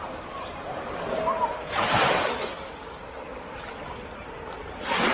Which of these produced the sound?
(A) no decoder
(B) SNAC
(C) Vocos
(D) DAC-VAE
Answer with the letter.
A